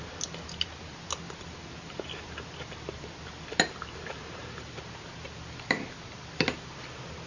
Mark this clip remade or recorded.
recorded